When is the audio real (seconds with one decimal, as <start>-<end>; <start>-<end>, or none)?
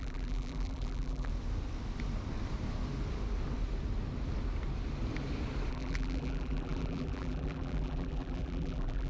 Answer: 1.3-5.7